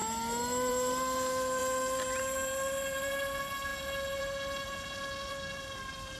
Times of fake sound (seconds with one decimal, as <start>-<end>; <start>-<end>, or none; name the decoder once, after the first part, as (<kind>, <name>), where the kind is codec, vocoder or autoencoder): 0.7-1.6 (vocoder, BigVGAN v2); 2.2-6.2